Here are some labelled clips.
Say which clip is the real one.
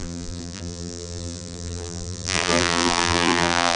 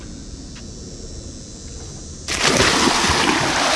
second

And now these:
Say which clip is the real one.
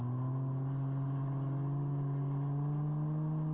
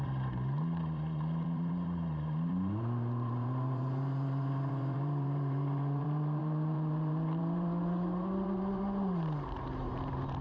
first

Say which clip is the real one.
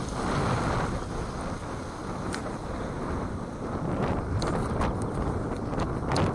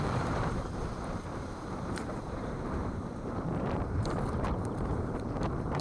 first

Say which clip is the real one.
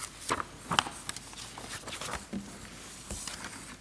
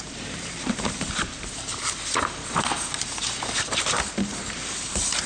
first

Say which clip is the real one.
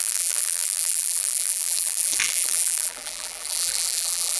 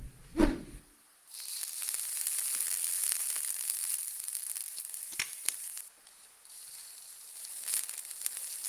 second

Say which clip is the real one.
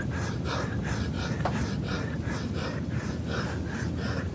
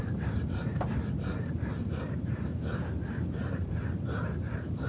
first